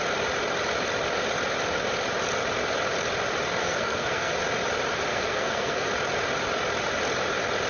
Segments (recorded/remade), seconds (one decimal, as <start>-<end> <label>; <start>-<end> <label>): 0.0-3.6 recorded; 3.6-4.3 remade; 4.3-5.1 recorded; 5.1-5.9 remade; 5.9-7.7 recorded